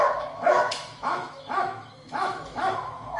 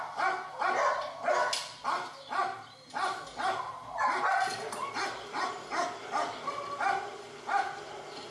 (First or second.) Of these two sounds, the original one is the second